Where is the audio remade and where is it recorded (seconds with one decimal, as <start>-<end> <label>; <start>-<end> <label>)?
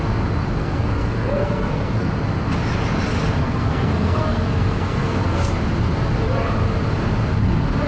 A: 0.0-0.6 recorded; 0.6-2.1 remade; 2.1-3.4 recorded; 3.4-5.5 remade; 5.5-7.9 recorded